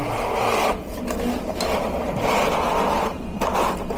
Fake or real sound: real